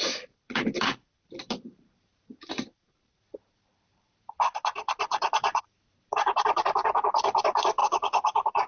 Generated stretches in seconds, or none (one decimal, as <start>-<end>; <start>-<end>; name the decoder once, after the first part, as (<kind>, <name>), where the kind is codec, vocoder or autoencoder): 0.0-8.7 (vocoder, BigVGAN v2)